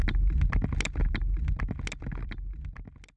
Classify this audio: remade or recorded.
recorded